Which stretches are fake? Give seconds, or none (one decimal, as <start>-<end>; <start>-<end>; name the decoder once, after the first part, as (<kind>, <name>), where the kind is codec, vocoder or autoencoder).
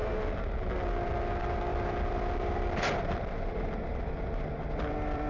1.7-5.3 (vocoder, BigVGAN v2)